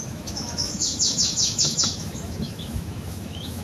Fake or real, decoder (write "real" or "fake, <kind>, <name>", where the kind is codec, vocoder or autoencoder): fake, autoencoder, DAC-VAE